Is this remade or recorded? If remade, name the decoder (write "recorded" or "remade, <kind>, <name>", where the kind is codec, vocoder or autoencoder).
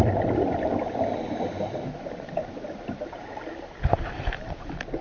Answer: recorded